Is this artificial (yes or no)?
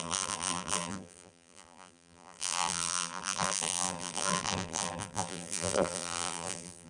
yes